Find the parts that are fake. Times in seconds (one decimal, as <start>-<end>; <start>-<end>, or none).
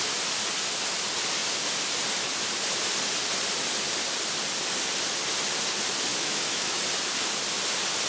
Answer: 6.1-6.8